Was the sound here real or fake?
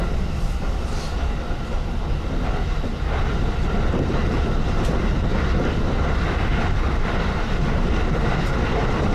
real